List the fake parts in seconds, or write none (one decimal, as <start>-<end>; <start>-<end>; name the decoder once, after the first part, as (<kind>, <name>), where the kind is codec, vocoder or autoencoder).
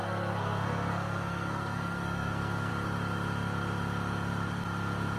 0.0-2.7 (codec, SNAC)